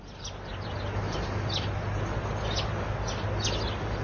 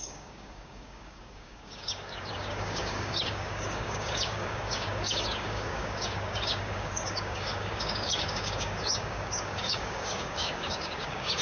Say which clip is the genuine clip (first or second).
first